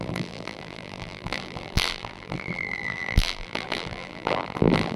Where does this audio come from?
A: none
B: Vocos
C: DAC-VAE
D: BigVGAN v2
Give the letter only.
D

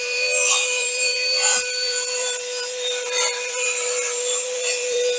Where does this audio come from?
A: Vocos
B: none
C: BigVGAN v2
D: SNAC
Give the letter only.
C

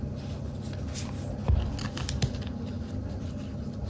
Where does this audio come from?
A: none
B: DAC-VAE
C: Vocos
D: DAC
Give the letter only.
A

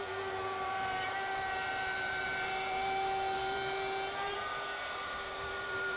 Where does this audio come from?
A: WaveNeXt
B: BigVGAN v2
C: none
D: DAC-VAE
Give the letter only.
B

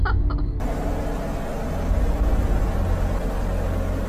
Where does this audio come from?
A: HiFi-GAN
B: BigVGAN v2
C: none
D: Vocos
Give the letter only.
C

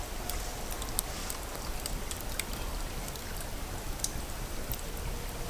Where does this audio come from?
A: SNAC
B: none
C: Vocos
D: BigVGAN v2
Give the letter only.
B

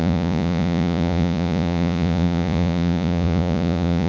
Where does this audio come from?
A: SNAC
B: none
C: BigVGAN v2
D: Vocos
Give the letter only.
D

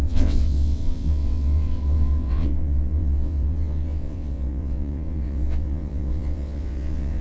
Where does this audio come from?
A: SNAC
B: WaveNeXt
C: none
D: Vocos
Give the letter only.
B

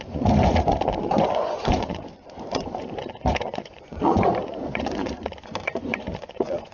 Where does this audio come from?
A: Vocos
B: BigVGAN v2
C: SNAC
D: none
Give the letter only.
A